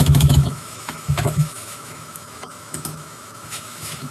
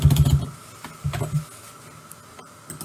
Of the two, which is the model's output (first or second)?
first